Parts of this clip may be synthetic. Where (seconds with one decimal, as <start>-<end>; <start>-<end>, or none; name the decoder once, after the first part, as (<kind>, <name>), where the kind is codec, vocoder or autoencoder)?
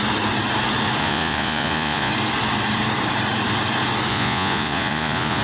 1.0-2.1 (vocoder, Vocos); 4.1-5.4